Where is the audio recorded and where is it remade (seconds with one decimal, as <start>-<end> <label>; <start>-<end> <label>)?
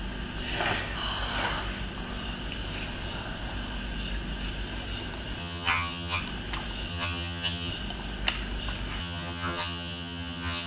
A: 0.0-5.4 recorded; 5.4-6.2 remade; 6.2-6.9 recorded; 6.9-7.7 remade; 7.7-9.0 recorded; 9.0-10.7 remade